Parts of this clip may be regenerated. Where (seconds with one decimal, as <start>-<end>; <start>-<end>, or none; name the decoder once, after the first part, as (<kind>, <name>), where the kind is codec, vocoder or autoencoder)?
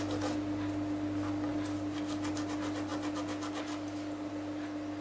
none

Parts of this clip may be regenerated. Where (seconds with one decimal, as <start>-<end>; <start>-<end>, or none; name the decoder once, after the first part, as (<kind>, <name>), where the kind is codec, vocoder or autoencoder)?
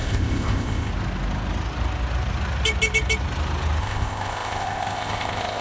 0.0-0.9 (codec, ZipCodec); 3.8-5.6